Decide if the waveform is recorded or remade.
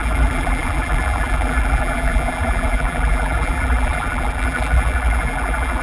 remade